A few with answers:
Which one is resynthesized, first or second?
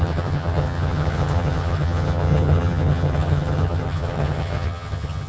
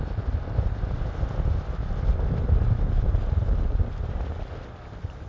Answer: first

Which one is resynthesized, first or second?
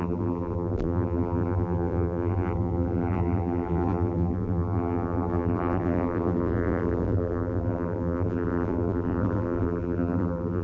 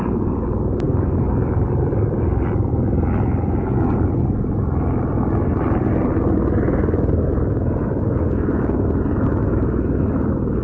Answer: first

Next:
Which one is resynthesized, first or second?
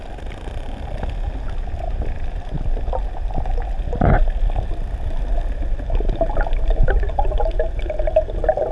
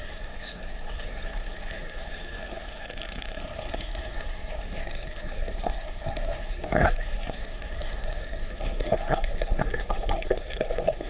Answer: second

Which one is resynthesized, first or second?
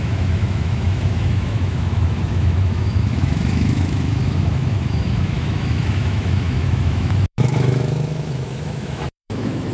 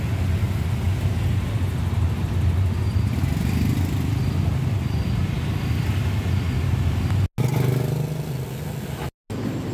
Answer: first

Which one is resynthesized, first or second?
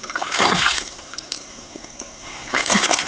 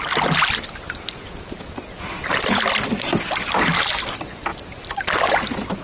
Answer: first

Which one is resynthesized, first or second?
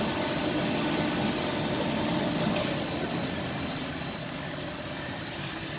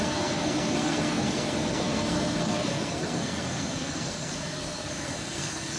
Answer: second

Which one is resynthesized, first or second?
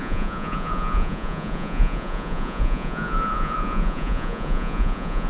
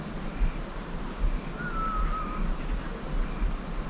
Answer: first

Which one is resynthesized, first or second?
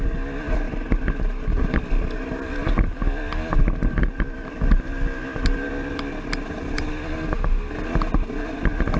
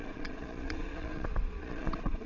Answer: second